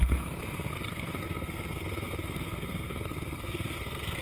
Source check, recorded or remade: remade